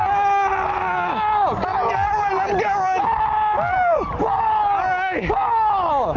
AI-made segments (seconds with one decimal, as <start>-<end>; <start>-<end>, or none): none